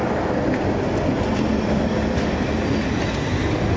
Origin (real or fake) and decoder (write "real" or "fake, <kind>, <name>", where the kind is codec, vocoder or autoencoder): real